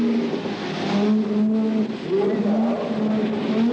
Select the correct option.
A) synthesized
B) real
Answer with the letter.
B